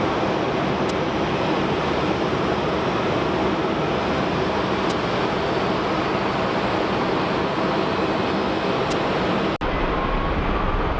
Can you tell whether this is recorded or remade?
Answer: recorded